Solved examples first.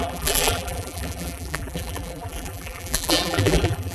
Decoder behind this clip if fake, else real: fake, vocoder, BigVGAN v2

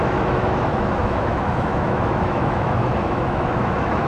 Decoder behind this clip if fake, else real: fake, autoencoder, DAC-VAE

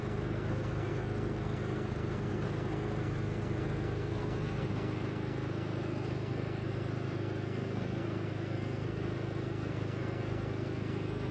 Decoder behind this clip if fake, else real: fake, codec, SNAC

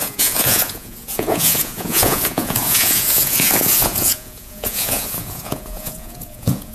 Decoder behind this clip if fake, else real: fake, vocoder, Vocos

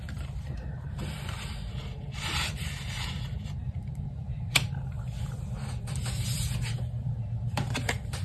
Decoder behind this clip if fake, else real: fake, vocoder, BigVGAN v2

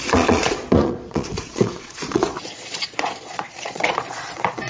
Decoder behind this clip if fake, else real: fake, vocoder, Vocos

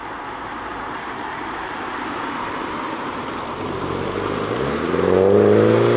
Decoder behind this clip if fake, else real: fake, vocoder, BigVGAN v2